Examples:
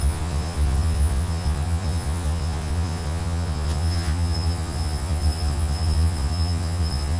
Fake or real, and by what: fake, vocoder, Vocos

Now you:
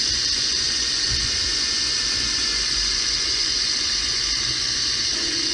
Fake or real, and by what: fake, vocoder, Vocos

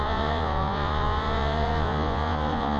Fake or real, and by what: fake, vocoder, Vocos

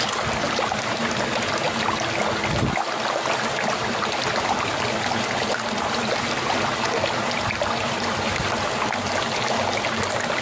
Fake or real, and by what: real